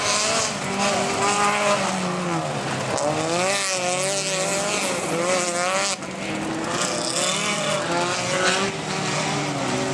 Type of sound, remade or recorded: recorded